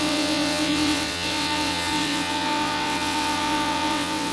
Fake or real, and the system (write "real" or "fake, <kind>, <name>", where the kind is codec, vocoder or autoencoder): fake, vocoder, WaveNeXt